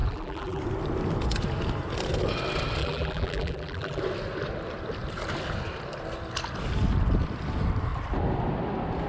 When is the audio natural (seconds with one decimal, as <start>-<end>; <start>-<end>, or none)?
0.6-2.8; 4.0-9.1

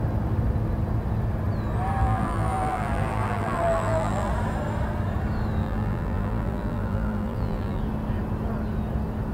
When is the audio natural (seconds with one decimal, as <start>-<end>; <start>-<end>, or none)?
0.0-2.0; 4.3-5.6; 7.8-9.3

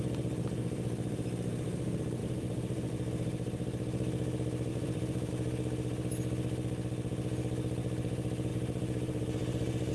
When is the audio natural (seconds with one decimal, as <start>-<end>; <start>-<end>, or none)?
0.0-2.2; 2.9-4.7; 5.3-8.5